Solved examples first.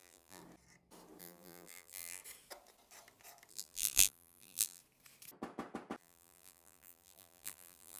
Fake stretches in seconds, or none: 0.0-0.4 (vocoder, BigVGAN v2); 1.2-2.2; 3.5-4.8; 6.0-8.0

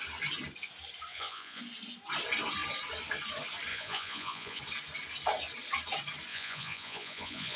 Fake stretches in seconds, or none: 1.1-1.6 (vocoder, Vocos); 3.7-4.6; 6.3-7.6

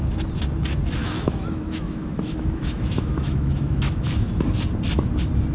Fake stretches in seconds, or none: 1.0-4.3 (autoencoder, DAC-VAE)

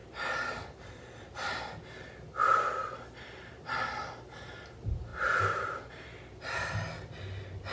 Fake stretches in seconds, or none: none

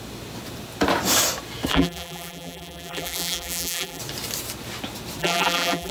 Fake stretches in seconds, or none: 1.7-4.0 (vocoder, BigVGAN v2); 5.2-5.9

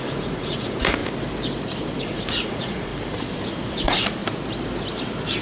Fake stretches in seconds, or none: 0.0-1.0 (vocoder, Vocos); 2.0-2.9; 3.7-4.2

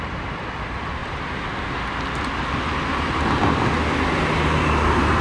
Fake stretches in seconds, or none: 0.0-1.0 (vocoder, BigVGAN v2); 4.1-5.2

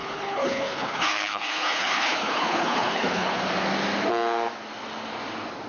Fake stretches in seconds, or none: 0.0-3.4 (codec, HILCodec)